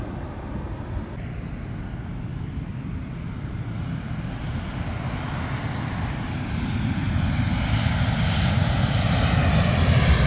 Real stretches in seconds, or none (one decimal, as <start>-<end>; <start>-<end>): 0.0-10.3